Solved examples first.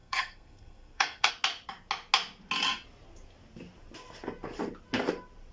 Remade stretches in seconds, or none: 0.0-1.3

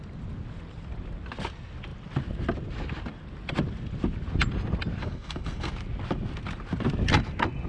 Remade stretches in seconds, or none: 5.0-5.7

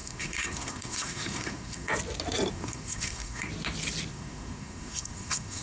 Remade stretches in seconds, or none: 0.0-1.9; 2.5-3.5; 4.1-5.6

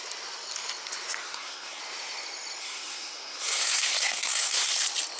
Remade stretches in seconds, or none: 1.2-1.8; 2.6-4.7

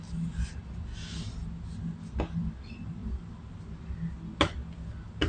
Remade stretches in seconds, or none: none